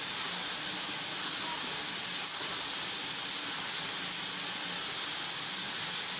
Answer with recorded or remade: recorded